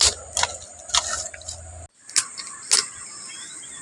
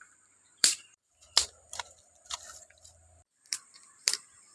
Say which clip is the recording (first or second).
first